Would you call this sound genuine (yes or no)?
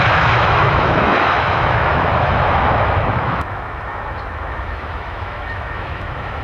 no